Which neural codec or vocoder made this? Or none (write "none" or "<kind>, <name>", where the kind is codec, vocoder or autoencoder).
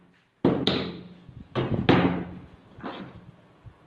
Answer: none